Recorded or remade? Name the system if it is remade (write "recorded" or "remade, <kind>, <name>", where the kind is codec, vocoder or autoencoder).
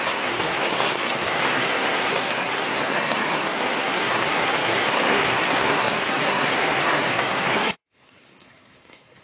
remade, codec, SNAC